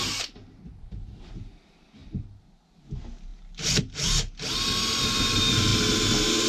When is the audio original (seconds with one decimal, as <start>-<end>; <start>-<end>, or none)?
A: 0.0-6.5